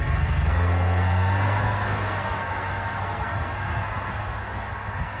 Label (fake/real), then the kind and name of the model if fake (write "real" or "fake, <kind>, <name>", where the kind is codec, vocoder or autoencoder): fake, codec, SNAC